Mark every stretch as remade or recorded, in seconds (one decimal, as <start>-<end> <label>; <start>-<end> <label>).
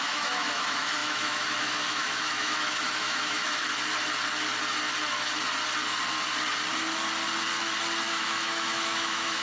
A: 0.0-3.7 remade; 3.7-8.1 recorded; 8.1-9.4 remade